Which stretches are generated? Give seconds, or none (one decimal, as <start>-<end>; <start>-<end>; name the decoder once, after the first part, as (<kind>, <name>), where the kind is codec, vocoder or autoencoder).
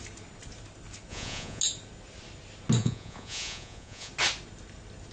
1.1-1.6 (vocoder, Vocos); 2.8-4.1